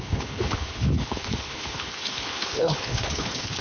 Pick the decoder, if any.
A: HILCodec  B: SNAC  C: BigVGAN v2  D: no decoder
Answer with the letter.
A